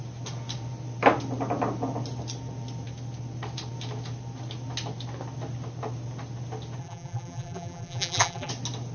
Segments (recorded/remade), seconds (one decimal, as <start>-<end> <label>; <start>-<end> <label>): 0.0-6.8 recorded; 6.8-8.5 remade; 8.5-8.9 recorded